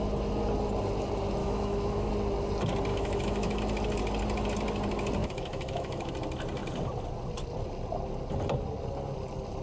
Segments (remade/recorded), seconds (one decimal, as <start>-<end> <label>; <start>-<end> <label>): 0.0-1.4 recorded; 1.4-2.1 remade; 2.1-2.9 recorded; 2.9-3.6 remade; 3.6-5.2 recorded; 5.2-6.1 remade; 6.1-9.6 recorded